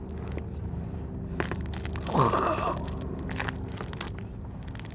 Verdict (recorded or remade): recorded